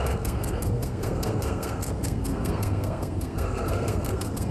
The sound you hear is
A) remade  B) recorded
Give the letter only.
A